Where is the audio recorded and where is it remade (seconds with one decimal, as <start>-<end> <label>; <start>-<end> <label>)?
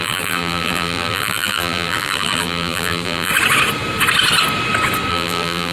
0.0-3.3 remade; 3.3-5.1 recorded; 5.1-5.7 remade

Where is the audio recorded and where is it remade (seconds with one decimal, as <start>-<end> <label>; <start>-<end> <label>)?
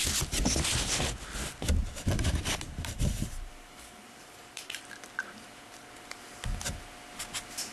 0.0-1.8 recorded; 1.8-4.8 remade; 4.8-7.7 recorded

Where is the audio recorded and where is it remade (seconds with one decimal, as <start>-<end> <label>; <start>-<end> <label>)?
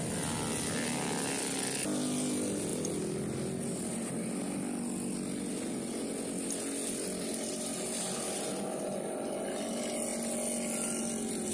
0.0-11.5 recorded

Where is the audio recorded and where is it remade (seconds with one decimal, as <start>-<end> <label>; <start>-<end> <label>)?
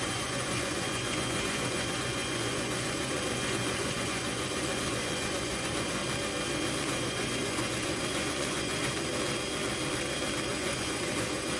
0.0-6.0 remade; 6.0-6.8 recorded; 6.8-9.1 remade; 9.1-10.5 recorded; 10.5-11.6 remade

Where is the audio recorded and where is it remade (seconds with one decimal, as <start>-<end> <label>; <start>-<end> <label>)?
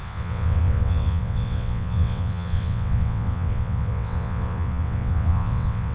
0.0-5.9 remade